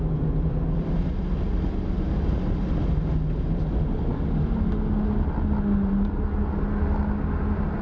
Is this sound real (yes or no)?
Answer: yes